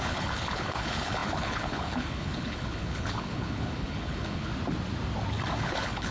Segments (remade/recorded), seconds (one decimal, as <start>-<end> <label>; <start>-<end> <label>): 0.0-4.5 remade; 4.5-5.6 recorded; 5.6-6.1 remade